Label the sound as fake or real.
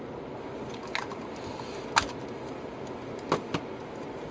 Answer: real